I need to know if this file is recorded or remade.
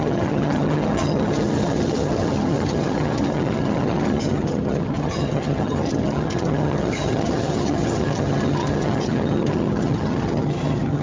remade